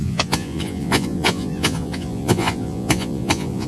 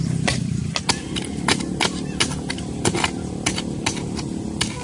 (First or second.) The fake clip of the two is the first